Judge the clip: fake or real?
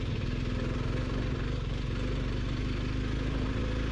real